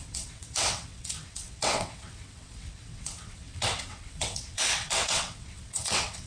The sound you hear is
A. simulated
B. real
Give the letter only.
A